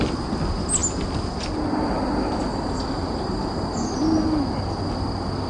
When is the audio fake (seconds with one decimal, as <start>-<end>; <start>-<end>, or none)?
2.5-3.7